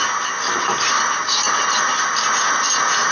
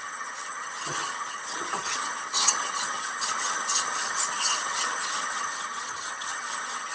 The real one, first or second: first